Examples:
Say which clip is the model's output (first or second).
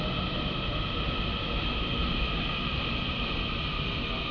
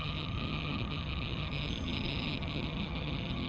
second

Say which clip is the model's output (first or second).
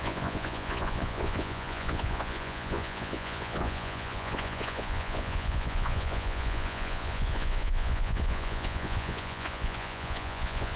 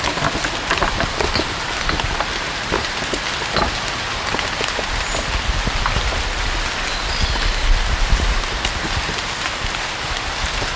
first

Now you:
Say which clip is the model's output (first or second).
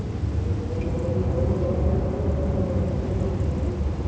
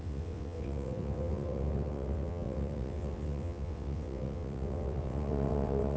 second